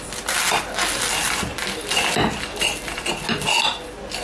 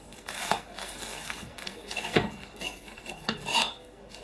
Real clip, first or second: first